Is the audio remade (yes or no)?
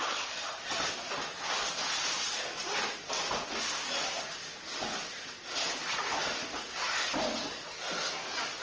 no